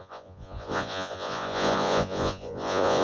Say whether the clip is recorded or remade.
remade